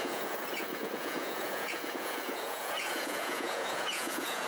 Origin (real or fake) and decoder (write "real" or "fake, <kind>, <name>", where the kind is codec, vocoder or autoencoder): fake, vocoder, Vocos